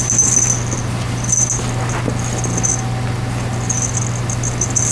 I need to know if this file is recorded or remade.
recorded